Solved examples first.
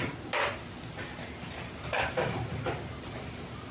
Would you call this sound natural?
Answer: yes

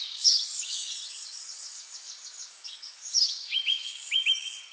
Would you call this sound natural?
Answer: no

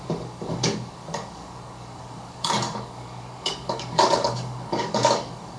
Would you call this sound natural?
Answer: no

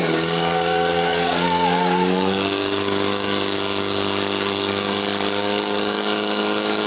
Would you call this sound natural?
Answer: no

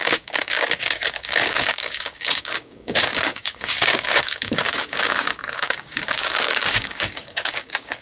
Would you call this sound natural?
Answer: no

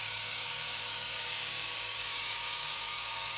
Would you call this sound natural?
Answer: no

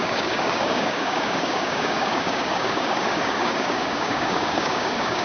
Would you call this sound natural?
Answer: no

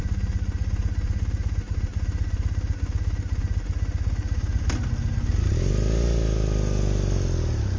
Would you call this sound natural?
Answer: yes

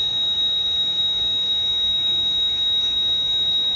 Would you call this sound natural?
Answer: no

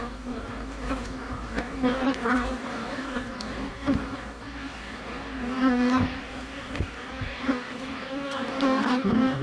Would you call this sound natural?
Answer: no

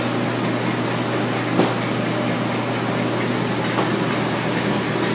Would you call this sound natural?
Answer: yes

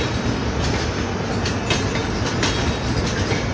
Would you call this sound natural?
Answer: yes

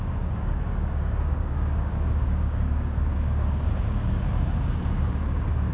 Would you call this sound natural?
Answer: no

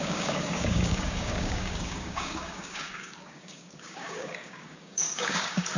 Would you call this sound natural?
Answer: no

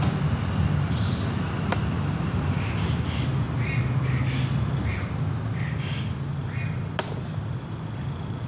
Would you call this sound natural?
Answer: yes